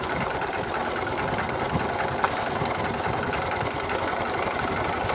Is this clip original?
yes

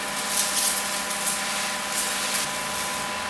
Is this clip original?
yes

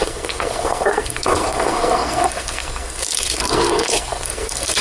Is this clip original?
no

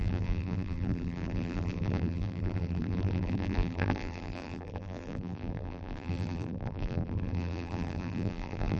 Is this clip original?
no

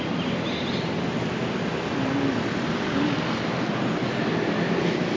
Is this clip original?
yes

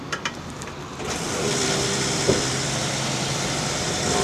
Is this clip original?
no